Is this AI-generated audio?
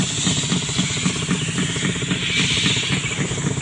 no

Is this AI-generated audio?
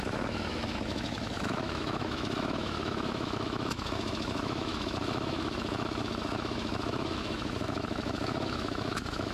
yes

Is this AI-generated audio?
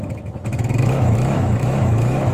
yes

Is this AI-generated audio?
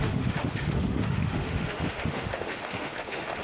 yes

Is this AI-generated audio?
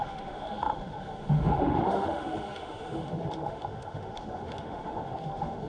yes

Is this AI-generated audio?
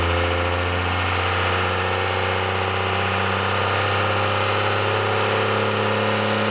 no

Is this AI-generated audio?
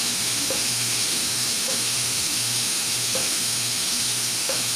yes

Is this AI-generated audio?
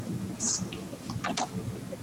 no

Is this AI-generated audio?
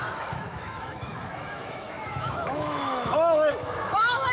yes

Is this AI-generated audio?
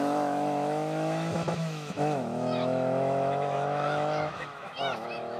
yes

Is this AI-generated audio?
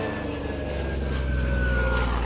no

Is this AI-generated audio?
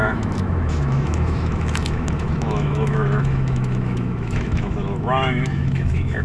yes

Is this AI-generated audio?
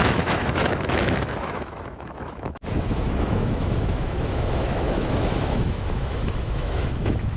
yes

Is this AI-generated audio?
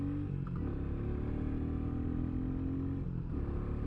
no